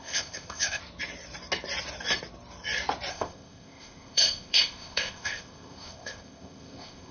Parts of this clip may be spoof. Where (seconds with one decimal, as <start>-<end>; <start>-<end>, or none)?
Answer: 0.0-0.8; 3.1-7.1